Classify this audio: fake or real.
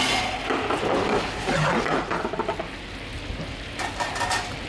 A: real